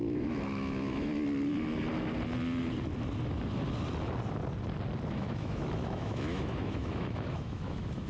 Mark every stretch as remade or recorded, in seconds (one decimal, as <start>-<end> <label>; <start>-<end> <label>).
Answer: 0.0-1.1 remade; 1.1-5.1 recorded; 5.1-8.1 remade